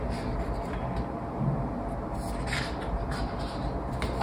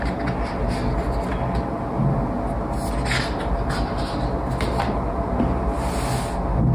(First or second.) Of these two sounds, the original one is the second